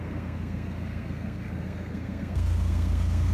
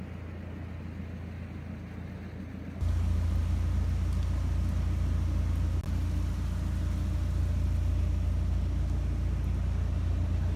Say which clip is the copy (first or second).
first